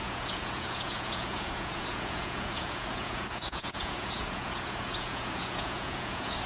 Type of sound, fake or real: fake